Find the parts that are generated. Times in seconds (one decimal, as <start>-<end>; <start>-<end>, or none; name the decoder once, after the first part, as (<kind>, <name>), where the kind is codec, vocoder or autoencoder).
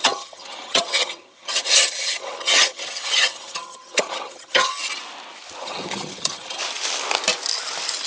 0.0-4.7 (vocoder, HiFi-GAN); 5.6-6.6